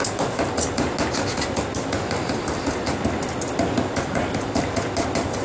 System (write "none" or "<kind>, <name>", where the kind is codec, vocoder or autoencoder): none